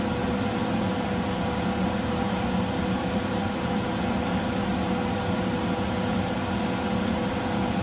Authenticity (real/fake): real